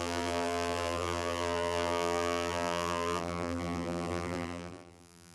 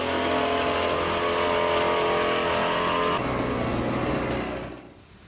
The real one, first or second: second